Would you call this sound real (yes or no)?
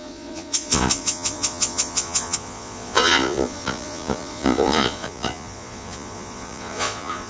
no